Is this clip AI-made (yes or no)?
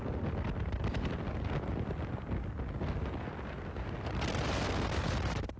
no